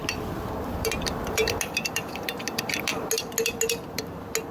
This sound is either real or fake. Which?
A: real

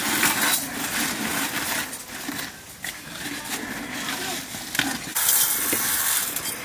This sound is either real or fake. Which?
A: real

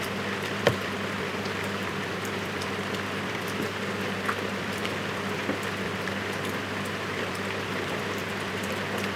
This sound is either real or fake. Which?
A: fake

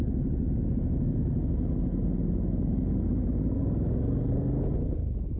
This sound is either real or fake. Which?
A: real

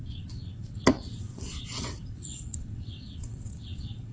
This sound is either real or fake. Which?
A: fake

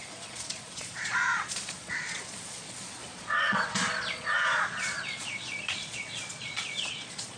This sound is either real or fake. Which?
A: fake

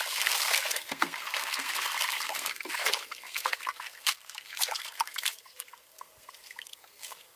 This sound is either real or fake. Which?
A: fake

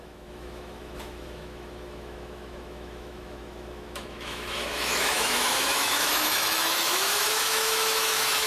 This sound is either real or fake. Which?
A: fake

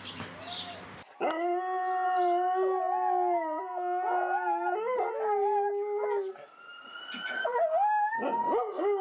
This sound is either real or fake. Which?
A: real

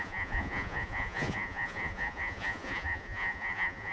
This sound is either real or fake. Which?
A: fake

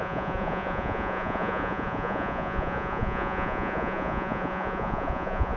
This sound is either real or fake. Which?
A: fake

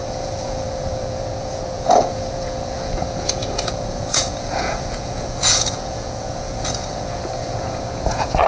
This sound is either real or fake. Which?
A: fake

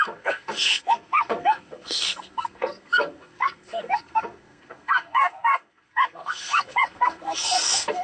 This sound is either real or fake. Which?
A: fake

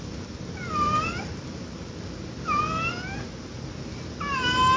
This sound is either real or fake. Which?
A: real